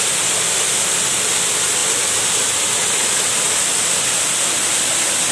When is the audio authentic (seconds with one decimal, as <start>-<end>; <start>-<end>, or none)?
0.0-5.3